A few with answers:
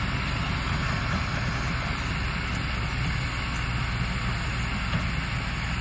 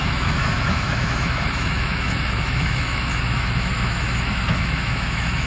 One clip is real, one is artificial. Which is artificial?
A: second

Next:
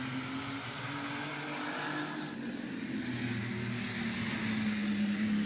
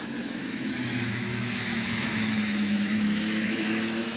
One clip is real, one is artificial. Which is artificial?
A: second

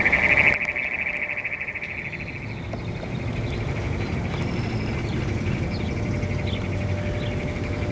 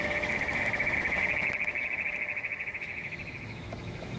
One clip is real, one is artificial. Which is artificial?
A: second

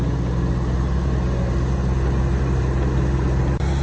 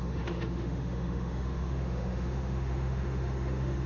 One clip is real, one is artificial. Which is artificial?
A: second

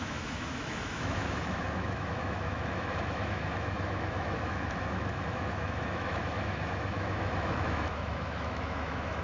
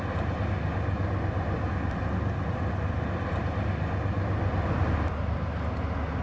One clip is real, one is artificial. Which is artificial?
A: first